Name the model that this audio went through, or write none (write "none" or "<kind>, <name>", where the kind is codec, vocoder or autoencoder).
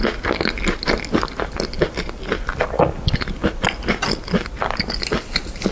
none